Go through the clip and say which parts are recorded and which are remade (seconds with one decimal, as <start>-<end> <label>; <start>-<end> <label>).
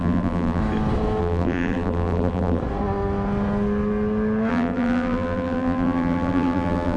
0.0-0.6 remade; 0.6-1.2 recorded; 1.2-2.6 remade; 2.6-4.5 recorded; 4.5-7.0 remade